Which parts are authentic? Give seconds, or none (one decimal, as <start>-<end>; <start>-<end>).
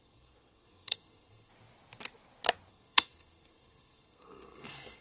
1.5-2.7